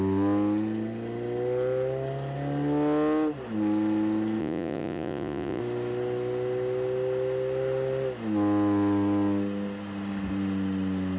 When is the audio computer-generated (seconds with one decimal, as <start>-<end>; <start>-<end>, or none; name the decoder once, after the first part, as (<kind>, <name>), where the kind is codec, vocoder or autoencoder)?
4.4-5.6 (vocoder, Vocos)